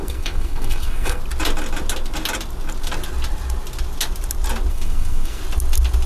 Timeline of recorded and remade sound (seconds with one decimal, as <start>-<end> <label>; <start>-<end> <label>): 0.0-1.2 remade; 1.2-4.7 recorded; 4.7-5.4 remade; 5.4-6.1 recorded